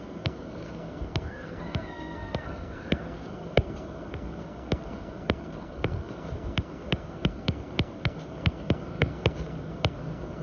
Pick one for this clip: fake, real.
fake